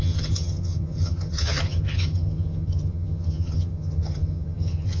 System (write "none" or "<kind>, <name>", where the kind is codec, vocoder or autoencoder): vocoder, HiFi-GAN